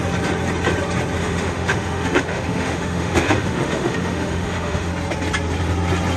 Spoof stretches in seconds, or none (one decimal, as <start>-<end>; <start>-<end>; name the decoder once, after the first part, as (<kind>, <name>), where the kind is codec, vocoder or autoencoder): 1.2-4.9 (autoencoder, DAC-VAE)